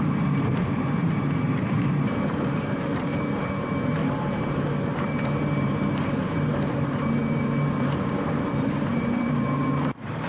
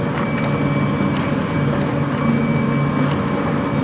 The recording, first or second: second